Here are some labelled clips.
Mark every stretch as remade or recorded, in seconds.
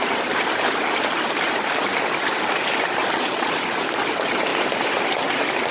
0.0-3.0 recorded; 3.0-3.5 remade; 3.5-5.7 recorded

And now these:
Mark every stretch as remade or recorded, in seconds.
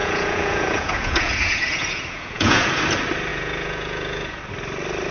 0.0-2.8 remade; 2.8-3.3 recorded; 3.3-4.4 remade; 4.4-5.1 recorded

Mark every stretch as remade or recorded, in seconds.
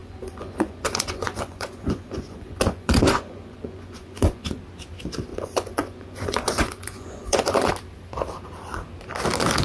0.0-4.6 remade; 4.6-5.3 recorded; 5.3-7.7 remade; 7.7-9.6 recorded